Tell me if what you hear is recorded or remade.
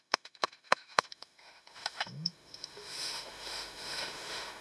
remade